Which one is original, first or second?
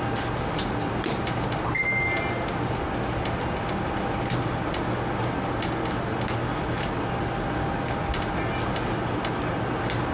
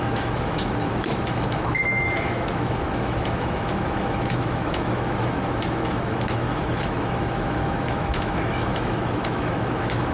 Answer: first